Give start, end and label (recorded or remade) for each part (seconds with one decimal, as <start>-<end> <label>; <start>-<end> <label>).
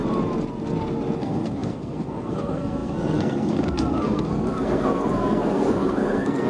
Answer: 0.0-1.2 recorded; 1.2-6.5 remade